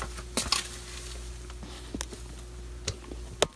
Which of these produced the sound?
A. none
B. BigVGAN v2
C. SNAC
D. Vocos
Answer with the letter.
A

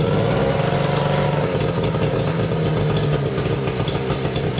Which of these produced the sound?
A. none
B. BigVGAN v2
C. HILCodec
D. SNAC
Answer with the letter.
A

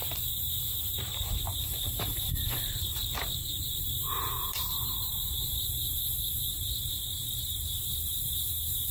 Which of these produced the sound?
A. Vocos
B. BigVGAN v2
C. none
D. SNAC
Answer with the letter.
B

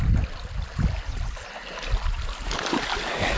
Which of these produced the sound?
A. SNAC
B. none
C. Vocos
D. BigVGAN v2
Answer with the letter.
B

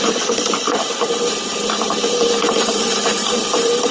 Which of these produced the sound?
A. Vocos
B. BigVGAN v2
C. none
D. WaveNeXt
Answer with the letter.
B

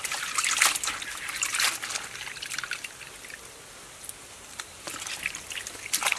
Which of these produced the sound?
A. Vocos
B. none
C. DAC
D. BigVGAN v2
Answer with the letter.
B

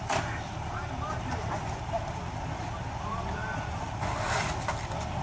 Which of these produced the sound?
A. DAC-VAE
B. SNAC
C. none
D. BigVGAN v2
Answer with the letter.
C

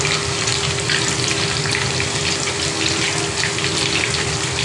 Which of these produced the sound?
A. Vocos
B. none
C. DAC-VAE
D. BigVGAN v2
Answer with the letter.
D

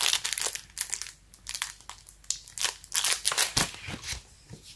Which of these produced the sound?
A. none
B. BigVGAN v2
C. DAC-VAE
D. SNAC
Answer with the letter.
A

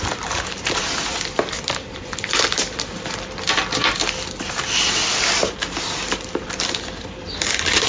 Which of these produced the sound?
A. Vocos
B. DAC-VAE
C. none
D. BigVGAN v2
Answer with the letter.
D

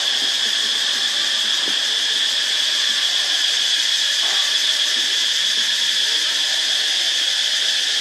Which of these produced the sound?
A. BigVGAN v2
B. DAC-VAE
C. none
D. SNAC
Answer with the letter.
C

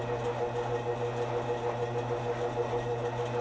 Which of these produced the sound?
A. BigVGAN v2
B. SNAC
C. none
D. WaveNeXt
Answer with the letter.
C